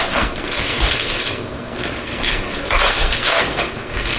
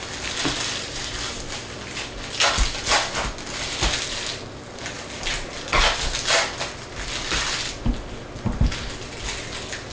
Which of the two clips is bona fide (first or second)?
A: second